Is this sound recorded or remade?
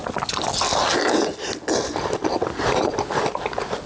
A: recorded